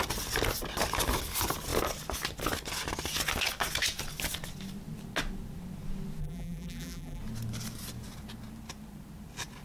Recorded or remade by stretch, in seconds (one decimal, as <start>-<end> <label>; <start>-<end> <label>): 0.0-6.2 recorded; 6.2-7.2 remade; 7.2-9.6 recorded